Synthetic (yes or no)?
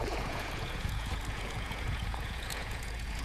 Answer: yes